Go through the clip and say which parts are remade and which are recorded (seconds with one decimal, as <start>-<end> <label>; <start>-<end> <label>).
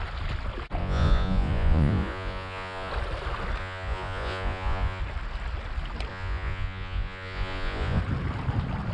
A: 0.0-0.8 recorded; 0.8-2.9 remade; 2.9-3.6 recorded; 3.6-5.0 remade; 5.0-6.1 recorded; 6.1-8.0 remade; 8.0-8.9 recorded